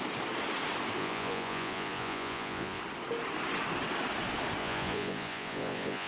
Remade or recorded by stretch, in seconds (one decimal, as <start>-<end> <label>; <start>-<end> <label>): 0.0-1.0 recorded; 1.0-2.8 remade; 2.8-4.6 recorded; 4.6-6.1 remade